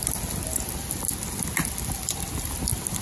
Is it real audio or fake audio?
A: real